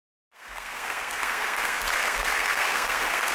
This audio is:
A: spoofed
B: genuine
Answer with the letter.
A